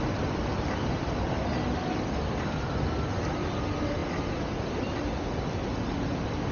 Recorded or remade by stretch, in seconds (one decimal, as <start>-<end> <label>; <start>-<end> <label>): 0.0-6.5 recorded